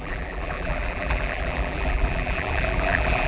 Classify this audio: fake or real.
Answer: fake